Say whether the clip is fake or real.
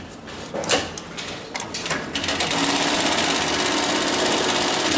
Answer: fake